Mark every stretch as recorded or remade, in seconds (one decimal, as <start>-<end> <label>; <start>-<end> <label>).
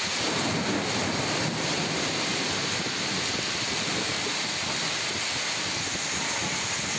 0.0-7.0 recorded